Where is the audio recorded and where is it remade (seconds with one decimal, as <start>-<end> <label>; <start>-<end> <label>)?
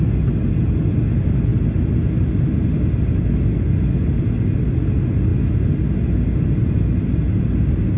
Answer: 0.0-8.0 recorded